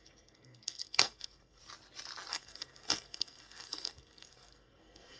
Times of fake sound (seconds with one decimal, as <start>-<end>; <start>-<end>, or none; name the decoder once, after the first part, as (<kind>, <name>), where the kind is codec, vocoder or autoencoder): 0.0-1.6 (codec, SNAC); 2.3-5.2